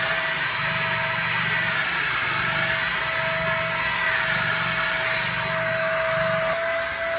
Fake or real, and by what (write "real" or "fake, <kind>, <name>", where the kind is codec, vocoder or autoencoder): real